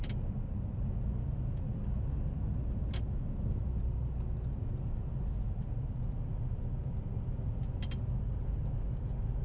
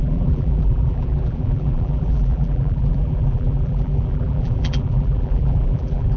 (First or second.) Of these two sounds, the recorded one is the first